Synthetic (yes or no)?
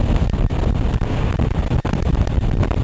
yes